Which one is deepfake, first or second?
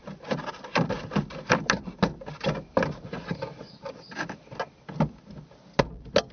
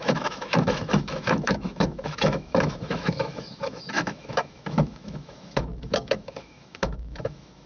second